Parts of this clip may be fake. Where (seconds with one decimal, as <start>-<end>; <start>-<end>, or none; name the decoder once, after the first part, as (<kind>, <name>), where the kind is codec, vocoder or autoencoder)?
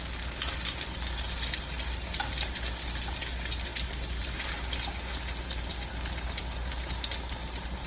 none